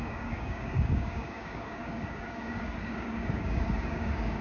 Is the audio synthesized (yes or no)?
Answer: yes